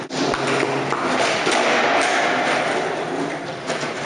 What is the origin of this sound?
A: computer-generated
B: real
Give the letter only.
B